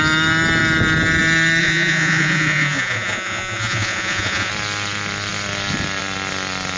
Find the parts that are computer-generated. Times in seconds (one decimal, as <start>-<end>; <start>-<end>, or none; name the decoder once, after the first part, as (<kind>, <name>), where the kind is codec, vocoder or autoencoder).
1.6-4.5 (vocoder, Vocos)